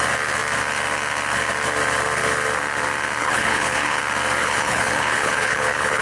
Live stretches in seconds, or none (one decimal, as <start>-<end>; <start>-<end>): 0.0-3.2; 4.0-4.4